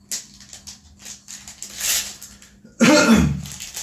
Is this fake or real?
real